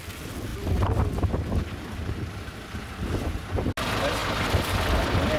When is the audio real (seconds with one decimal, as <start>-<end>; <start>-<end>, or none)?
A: 0.0-5.4